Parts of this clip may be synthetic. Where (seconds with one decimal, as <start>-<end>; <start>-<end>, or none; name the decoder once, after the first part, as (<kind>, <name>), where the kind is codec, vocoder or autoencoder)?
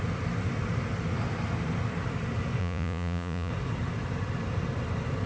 2.6-3.5 (vocoder, Vocos)